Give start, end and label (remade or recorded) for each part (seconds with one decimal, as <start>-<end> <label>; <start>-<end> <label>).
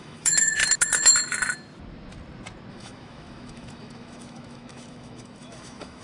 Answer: 0.0-0.6 remade; 0.6-2.7 recorded; 2.7-6.0 remade